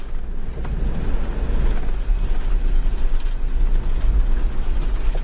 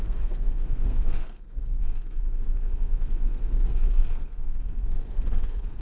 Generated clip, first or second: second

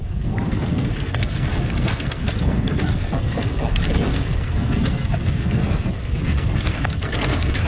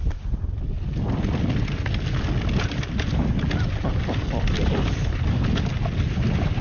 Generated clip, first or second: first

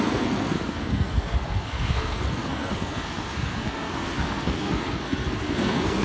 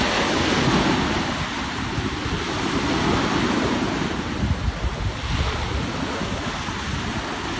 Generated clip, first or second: first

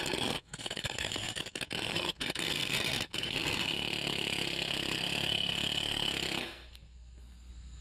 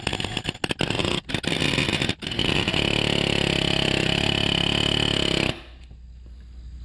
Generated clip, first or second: first